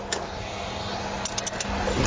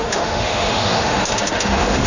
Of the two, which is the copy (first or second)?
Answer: second